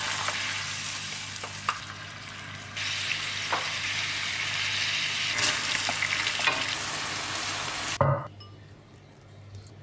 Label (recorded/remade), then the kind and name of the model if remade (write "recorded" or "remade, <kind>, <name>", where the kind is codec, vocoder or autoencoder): recorded